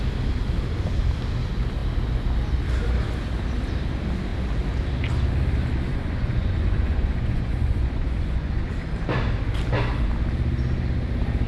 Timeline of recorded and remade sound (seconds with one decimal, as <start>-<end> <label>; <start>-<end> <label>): 0.0-5.9 recorded; 5.9-8.7 remade; 8.7-11.5 recorded